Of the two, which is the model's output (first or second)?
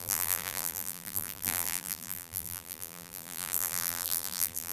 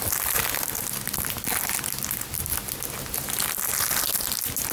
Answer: first